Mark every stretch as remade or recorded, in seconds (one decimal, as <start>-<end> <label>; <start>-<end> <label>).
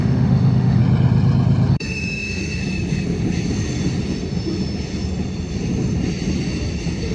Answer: 0.0-0.8 remade; 0.8-1.7 recorded; 1.7-2.6 remade; 2.6-7.1 recorded